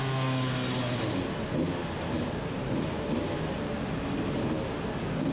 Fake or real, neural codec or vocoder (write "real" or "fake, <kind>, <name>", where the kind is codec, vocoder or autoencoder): real